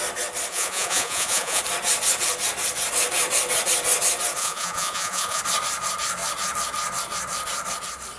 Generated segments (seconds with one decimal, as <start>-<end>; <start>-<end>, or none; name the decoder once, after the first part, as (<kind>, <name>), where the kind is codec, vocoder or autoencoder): 0.5-1.6 (vocoder, Vocos); 4.4-5.4